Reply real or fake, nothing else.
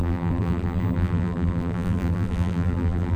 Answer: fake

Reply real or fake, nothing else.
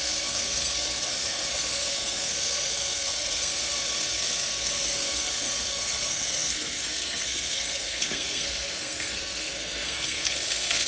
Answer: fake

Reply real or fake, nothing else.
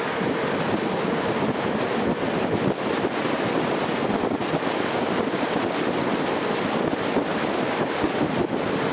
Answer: real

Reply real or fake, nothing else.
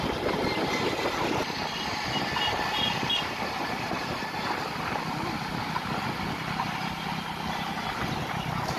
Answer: real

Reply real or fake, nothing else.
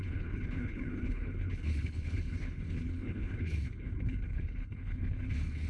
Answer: fake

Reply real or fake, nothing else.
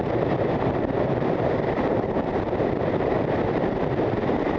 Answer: fake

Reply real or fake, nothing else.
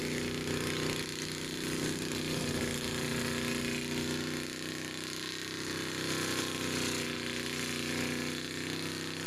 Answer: real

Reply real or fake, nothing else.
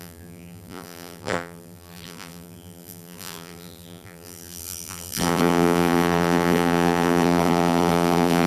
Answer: fake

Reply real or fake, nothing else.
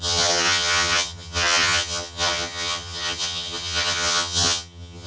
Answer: fake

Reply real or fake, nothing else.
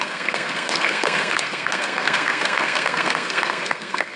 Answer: fake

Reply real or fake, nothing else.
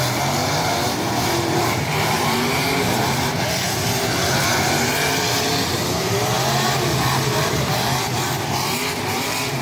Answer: fake